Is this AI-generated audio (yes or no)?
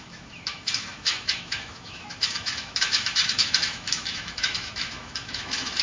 yes